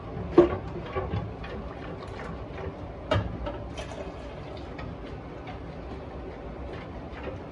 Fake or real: real